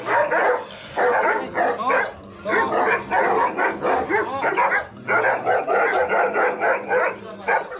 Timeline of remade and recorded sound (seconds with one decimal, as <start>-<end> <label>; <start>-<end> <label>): 0.0-7.8 recorded